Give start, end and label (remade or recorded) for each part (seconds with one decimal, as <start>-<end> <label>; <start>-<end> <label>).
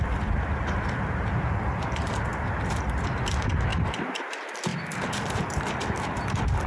0.0-3.7 recorded; 3.7-4.2 remade; 4.2-6.7 recorded